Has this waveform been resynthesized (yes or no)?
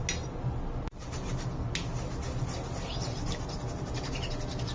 no